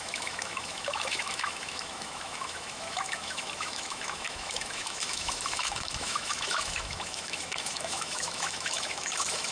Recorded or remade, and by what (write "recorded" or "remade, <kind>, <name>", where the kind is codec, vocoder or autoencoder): remade, autoencoder, DAC-VAE